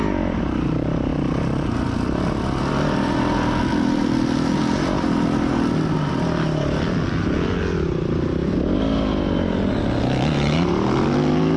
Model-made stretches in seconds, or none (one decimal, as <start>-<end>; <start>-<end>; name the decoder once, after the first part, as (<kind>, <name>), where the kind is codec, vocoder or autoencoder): none